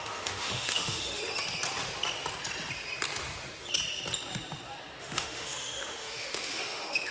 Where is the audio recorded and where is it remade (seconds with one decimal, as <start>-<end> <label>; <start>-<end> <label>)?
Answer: 0.0-1.2 remade; 1.2-5.0 recorded; 5.0-7.1 remade